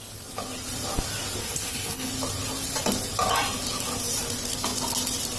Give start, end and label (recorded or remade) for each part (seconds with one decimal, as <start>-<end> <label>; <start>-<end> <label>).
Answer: 0.0-1.4 recorded; 1.4-2.1 remade; 2.1-5.4 recorded